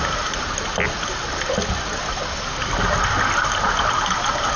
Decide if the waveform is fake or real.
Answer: real